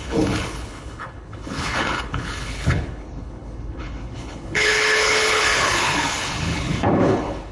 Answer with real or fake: fake